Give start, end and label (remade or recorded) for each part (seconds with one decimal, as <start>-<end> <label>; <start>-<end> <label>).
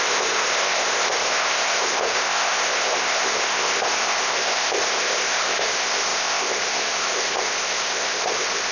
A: 0.0-8.7 remade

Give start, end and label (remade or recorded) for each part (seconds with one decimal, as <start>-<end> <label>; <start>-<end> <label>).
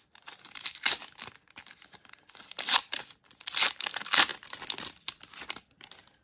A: 0.0-6.2 recorded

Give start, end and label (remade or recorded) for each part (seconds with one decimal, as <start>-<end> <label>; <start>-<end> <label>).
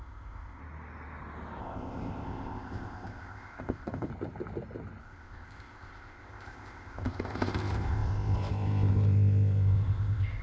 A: 0.0-0.6 remade; 0.6-1.6 recorded; 1.6-4.1 remade; 4.1-5.0 recorded; 5.0-10.4 remade